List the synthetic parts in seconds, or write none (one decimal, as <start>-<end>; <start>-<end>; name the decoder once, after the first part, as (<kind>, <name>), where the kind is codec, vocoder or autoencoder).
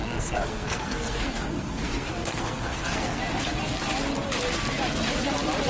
0.0-3.2 (codec, SNAC)